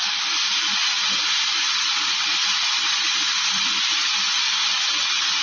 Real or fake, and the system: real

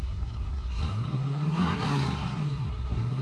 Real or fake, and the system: fake, codec, SNAC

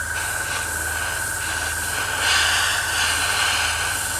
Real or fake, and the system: real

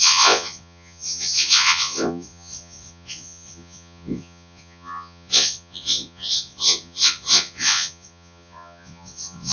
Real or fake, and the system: fake, vocoder, Vocos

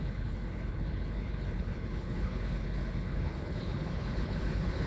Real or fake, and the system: fake, codec, HILCodec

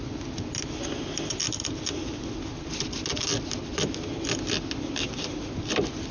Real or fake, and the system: real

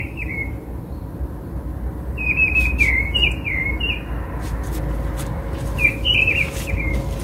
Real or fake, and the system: real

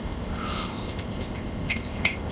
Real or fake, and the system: fake, codec, ZipCodec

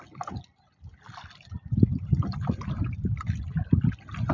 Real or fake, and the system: real